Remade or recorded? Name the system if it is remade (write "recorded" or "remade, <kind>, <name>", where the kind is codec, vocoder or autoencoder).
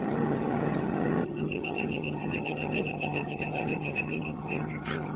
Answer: remade, vocoder, HiFi-GAN